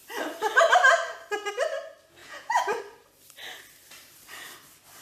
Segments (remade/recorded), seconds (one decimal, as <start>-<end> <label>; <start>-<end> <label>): 0.0-2.2 recorded; 2.2-2.8 remade; 2.8-5.0 recorded